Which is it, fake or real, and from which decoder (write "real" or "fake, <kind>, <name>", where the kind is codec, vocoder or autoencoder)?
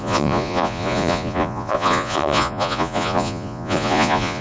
fake, vocoder, Vocos